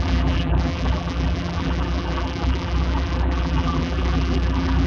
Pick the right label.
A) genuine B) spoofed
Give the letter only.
B